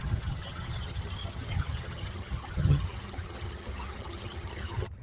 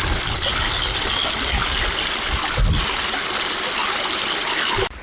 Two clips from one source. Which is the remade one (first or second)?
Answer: first